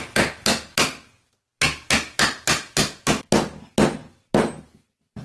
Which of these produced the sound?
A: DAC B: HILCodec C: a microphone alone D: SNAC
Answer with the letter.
C